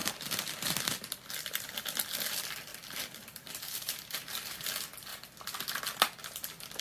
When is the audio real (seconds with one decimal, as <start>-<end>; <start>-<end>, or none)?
0.0-6.8